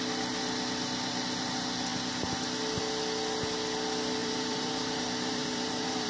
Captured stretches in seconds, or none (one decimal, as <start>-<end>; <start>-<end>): 0.0-4.2